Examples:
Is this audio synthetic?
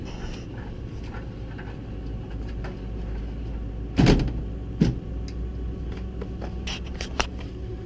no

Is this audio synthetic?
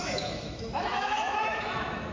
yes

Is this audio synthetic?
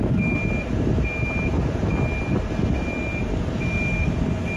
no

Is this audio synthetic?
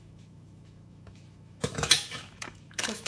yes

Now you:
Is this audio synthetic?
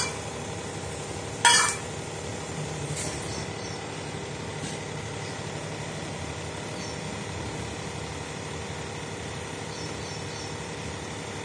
no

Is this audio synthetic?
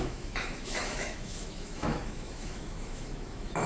yes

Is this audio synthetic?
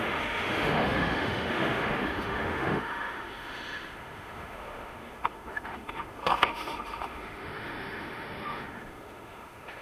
yes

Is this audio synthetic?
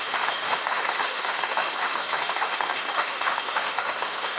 yes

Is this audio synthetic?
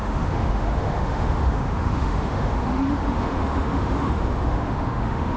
yes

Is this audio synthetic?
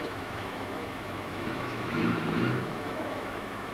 yes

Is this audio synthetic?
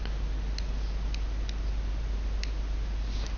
no